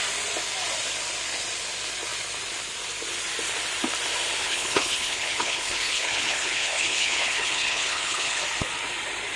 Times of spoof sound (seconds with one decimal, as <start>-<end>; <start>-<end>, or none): 4.4-8.4